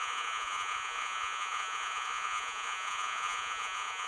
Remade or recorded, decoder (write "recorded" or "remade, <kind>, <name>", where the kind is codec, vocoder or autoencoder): remade, vocoder, Vocos